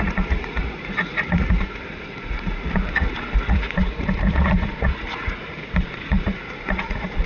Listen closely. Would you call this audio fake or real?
fake